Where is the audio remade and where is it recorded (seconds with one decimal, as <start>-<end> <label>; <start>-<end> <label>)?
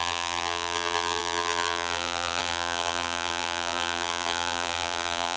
0.0-5.4 remade